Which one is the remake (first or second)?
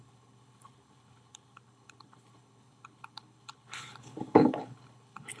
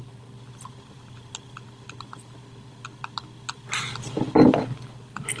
first